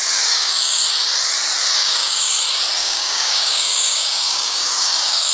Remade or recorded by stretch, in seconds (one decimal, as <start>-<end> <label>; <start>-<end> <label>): 0.0-0.8 remade; 0.8-1.8 recorded; 1.8-2.3 remade; 2.3-2.8 recorded; 2.8-5.3 remade

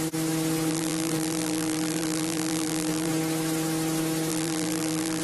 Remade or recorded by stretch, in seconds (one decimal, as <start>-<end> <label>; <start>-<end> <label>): 0.0-0.7 recorded; 0.7-3.1 remade; 3.1-4.3 recorded; 4.3-5.2 remade